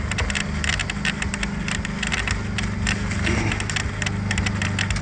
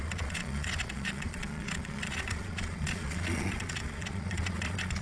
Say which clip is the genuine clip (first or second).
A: first